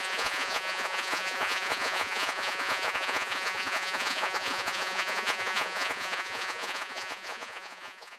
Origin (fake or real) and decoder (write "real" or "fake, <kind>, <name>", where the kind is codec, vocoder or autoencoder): fake, vocoder, Vocos